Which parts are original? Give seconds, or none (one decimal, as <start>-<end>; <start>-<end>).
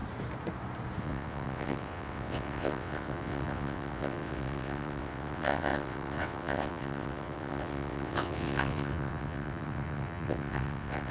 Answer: 0.0-1.0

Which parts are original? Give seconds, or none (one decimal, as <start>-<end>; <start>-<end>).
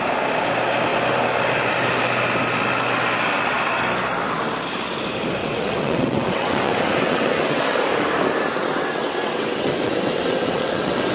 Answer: 0.0-5.4; 7.8-8.6